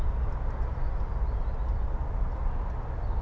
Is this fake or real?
real